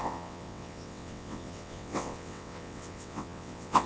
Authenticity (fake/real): fake